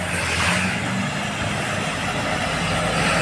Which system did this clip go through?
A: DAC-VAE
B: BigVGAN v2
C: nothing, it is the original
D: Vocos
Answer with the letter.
C